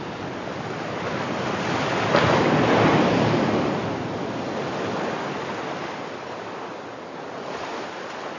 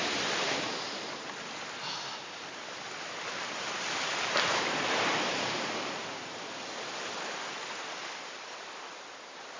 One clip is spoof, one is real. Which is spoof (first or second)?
second